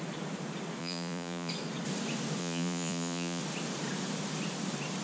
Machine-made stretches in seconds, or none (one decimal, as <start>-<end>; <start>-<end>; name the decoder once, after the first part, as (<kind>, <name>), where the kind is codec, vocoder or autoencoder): 0.8-1.5 (vocoder, Vocos); 2.4-3.4